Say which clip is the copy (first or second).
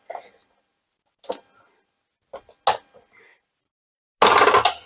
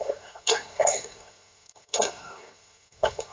second